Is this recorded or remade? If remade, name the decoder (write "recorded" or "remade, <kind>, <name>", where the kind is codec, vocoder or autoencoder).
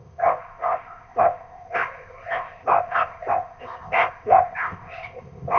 remade, codec, ZipCodec